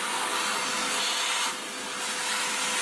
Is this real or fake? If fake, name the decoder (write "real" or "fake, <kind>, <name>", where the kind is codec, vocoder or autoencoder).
real